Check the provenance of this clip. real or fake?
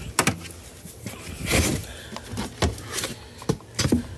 real